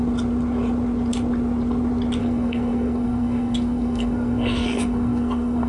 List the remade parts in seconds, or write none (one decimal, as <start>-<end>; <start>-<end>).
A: 2.2-5.7